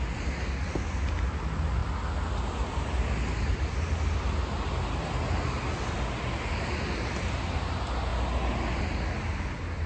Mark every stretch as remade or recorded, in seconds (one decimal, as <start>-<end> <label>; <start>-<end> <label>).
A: 0.0-9.9 recorded